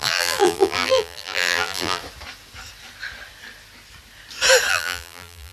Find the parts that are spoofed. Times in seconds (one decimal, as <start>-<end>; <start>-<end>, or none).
0.0-2.0; 4.7-5.5